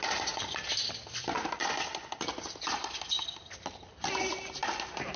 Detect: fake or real real